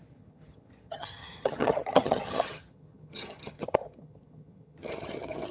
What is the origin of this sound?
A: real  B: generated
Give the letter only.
B